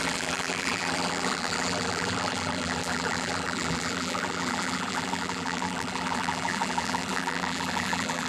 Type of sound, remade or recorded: remade